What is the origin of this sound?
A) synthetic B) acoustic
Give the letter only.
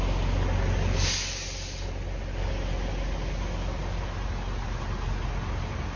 B